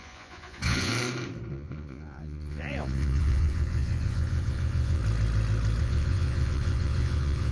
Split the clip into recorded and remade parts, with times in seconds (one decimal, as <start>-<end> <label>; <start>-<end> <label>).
0.0-0.9 remade; 0.9-1.5 recorded; 1.5-5.0 remade; 5.0-5.8 recorded; 5.8-7.5 remade

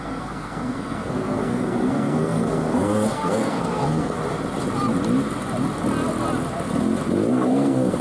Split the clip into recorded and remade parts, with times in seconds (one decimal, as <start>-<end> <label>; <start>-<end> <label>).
0.0-4.2 remade; 4.2-7.3 recorded; 7.3-8.0 remade

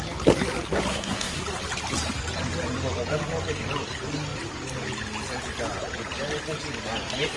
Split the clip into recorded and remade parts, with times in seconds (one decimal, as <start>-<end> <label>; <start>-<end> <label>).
0.0-0.9 recorded; 0.9-1.4 remade; 1.4-7.4 recorded

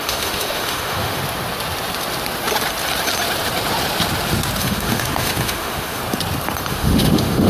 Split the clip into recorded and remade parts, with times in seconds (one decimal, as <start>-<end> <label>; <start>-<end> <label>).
0.0-1.2 remade; 1.2-4.6 recorded; 4.6-6.0 remade; 6.0-6.7 recorded; 6.7-7.5 remade

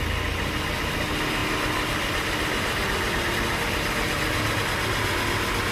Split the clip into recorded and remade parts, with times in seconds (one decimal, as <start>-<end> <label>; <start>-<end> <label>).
0.0-5.7 recorded

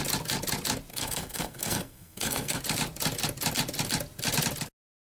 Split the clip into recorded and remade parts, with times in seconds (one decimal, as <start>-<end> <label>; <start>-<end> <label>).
0.0-0.9 recorded; 0.9-2.6 remade; 2.6-5.1 recorded